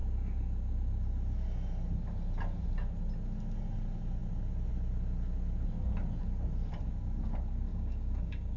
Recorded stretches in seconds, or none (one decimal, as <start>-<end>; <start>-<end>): 0.0-7.7